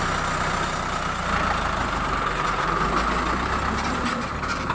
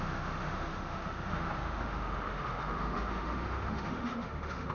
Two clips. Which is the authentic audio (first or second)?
first